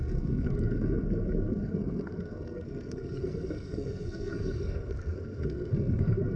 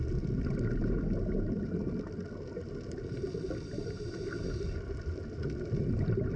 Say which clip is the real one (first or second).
second